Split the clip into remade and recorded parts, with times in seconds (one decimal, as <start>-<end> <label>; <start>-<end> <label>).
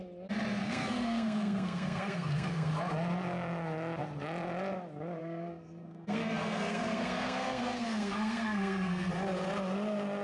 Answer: 0.0-0.6 recorded; 0.6-2.7 remade; 2.7-5.2 recorded; 5.2-9.1 remade; 9.1-10.2 recorded